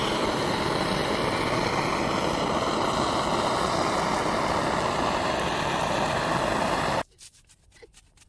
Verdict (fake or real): real